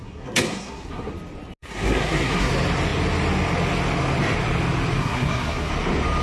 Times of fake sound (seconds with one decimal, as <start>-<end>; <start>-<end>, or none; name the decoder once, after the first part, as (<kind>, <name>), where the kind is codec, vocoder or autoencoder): 0.0-1.1 (codec, SNAC); 1.6-2.5; 5.0-5.7